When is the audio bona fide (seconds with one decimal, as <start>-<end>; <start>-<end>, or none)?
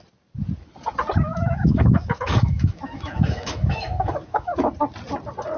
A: 0.0-1.3; 4.7-5.6